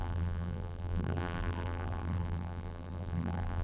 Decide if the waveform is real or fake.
fake